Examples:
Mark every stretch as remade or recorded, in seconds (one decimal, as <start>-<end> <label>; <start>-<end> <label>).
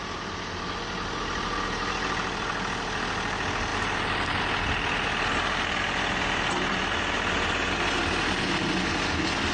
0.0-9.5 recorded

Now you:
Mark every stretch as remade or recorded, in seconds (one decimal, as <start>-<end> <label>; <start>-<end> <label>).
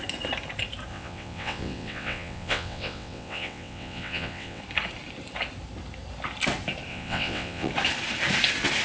0.0-0.9 recorded; 0.9-4.6 remade; 4.6-6.9 recorded; 6.9-7.7 remade; 7.7-8.8 recorded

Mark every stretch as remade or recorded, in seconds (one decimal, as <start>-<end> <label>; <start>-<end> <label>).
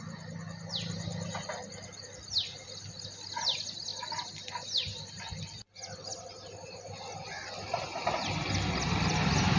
0.0-9.6 recorded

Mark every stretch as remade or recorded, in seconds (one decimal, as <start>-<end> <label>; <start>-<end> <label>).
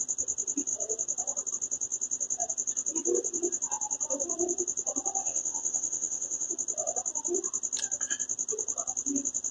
0.0-5.2 recorded; 5.2-6.5 remade; 6.5-9.5 recorded